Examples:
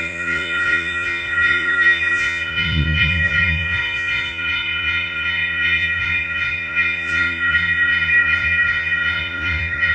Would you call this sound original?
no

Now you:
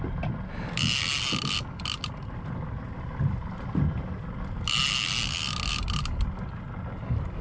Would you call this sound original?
yes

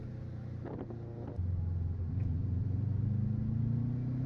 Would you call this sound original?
yes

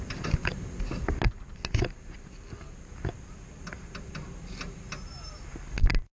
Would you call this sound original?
yes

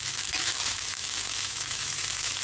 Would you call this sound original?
no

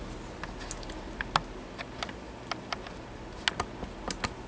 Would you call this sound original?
yes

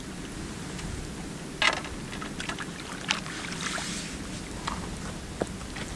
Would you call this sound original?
yes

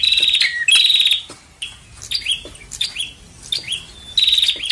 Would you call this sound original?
yes